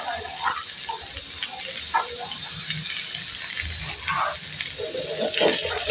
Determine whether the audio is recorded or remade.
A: recorded